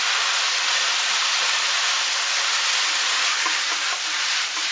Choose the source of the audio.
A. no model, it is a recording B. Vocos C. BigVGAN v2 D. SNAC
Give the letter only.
C